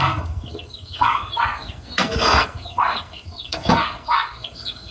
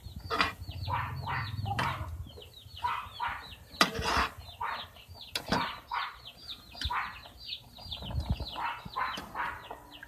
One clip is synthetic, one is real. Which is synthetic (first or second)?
first